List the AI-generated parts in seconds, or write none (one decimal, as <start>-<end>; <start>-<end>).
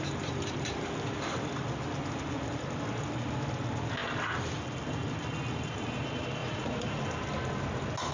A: 6.4-7.0